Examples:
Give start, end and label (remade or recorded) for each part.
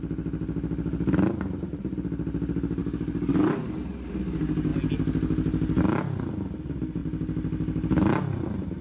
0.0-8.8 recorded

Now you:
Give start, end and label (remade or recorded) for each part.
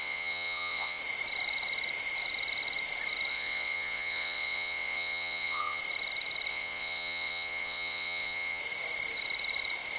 0.0-1.0 remade; 1.0-3.3 recorded; 3.3-5.8 remade; 5.8-6.5 recorded; 6.5-8.6 remade; 8.6-10.0 recorded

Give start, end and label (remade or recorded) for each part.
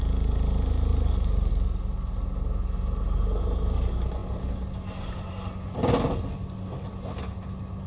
0.0-7.9 recorded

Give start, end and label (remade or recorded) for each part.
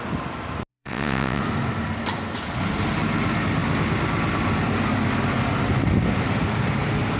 0.0-0.7 recorded; 0.7-1.4 remade; 1.4-7.2 recorded